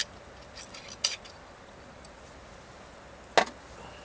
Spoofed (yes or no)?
no